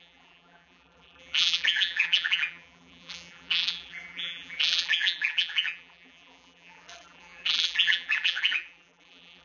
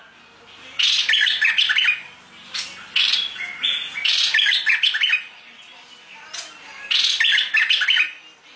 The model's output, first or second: first